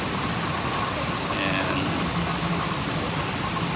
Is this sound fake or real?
real